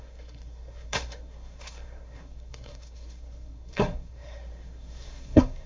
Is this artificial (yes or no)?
yes